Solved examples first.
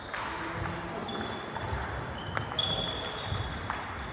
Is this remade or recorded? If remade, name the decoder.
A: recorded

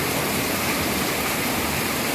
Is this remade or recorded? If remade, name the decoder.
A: remade, vocoder, BigVGAN v2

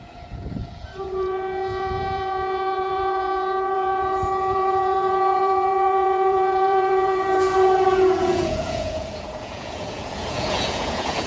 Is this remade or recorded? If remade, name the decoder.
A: remade, vocoder, Vocos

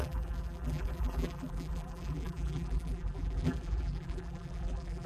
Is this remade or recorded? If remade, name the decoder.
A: remade, vocoder, BigVGAN v2